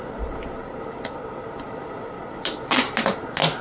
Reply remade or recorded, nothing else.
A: recorded